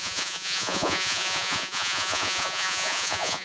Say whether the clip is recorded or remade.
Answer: remade